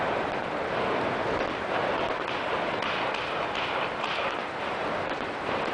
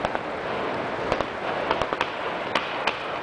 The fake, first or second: first